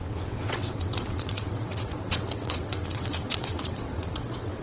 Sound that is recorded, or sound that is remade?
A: remade